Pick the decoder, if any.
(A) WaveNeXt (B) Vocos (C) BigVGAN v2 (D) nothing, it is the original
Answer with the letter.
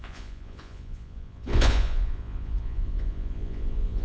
B